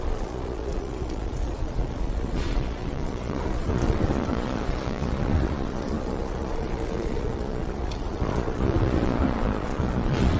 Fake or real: fake